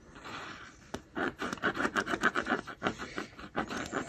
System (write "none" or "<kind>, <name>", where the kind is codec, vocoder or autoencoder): vocoder, Vocos